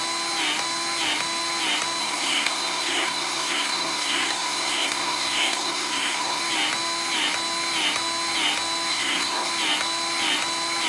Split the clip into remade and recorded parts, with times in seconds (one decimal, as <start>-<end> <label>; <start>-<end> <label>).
0.0-2.0 recorded; 2.0-6.4 remade; 6.4-8.9 recorded; 8.9-9.5 remade; 9.5-10.9 recorded